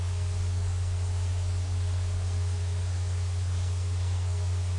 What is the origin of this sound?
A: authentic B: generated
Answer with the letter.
B